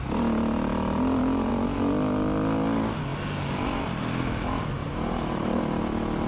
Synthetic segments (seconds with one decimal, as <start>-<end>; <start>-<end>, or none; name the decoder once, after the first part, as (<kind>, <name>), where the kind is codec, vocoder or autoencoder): 4.8-5.6 (vocoder, BigVGAN v2)